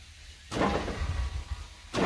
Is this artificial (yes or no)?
no